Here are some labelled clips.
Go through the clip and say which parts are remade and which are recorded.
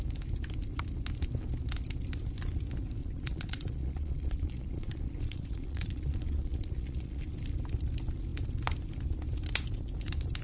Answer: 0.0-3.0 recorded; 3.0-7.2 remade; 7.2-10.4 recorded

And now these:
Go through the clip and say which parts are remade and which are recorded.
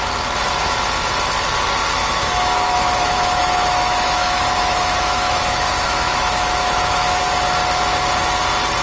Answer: 0.0-2.0 recorded; 2.0-7.2 remade; 7.2-8.8 recorded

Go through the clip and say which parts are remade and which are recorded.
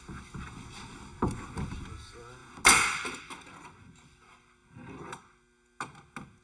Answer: 0.0-6.4 recorded